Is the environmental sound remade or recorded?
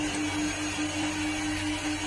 recorded